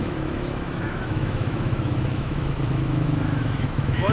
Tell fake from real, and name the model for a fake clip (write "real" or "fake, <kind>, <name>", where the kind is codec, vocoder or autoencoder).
fake, autoencoder, DAC-VAE